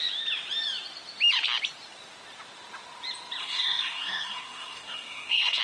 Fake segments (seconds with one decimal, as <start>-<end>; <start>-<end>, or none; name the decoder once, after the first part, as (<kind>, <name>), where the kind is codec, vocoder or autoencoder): 3.4-5.6 (codec, SNAC)